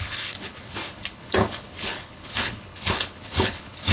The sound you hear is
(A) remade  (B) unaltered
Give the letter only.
A